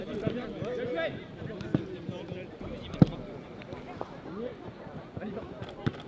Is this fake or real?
real